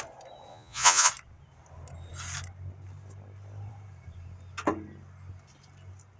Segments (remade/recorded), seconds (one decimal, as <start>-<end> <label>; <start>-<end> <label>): 0.0-0.5 recorded; 0.5-1.1 remade; 1.1-6.2 recorded